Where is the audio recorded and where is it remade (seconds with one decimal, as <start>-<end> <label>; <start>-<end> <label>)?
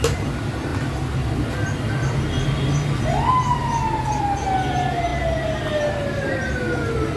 0.0-7.2 recorded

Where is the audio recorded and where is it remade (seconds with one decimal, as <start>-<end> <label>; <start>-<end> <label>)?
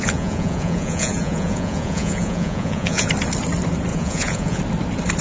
0.0-3.1 remade; 3.1-3.9 recorded; 3.9-4.6 remade; 4.6-5.2 recorded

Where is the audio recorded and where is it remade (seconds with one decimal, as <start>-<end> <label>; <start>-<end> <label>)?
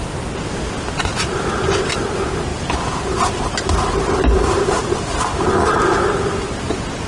0.0-2.5 recorded; 2.5-6.4 remade; 6.4-7.1 recorded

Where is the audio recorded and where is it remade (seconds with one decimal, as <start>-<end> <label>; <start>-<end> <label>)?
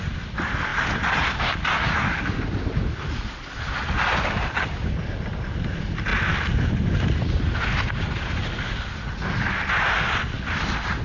0.0-11.0 recorded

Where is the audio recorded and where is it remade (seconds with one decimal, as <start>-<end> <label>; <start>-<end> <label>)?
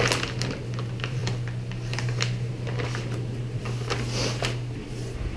0.0-5.4 recorded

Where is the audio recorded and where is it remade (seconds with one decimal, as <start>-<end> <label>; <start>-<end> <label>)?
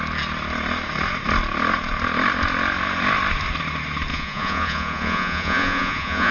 0.0-4.1 recorded; 4.1-6.3 remade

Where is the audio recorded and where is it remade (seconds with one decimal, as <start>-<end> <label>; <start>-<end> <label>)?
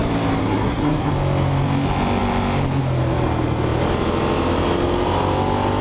0.0-0.4 recorded; 0.4-1.1 remade; 1.1-5.8 recorded